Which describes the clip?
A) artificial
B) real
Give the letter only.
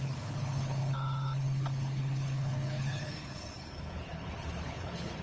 A